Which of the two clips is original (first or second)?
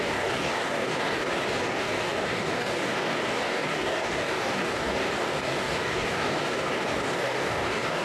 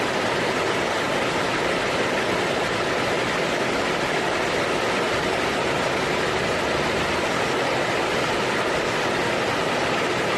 second